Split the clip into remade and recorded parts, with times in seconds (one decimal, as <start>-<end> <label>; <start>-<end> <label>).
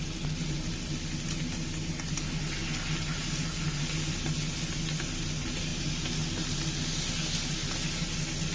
0.0-8.5 recorded